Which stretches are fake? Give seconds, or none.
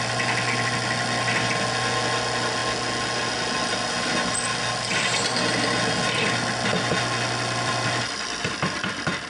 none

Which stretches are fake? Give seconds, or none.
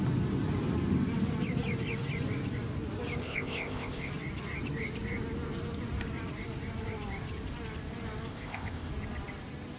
3.2-4.1 (codec, ZipCodec); 8.3-8.9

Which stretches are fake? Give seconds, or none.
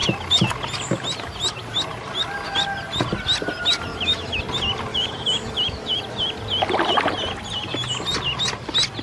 3.9-4.4 (autoencoder, DAC-VAE); 4.9-6.0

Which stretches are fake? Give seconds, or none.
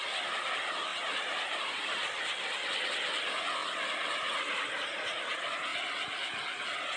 0.9-1.9 (vocoder, BigVGAN v2); 3.6-5.2